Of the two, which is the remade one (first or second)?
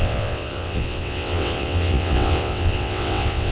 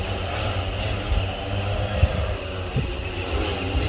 first